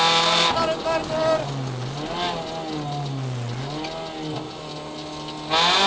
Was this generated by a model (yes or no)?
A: no